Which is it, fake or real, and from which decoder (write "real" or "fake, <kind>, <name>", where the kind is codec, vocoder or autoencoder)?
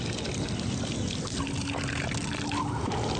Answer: real